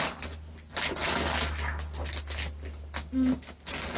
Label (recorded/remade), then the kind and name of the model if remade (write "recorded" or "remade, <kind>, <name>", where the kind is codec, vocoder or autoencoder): recorded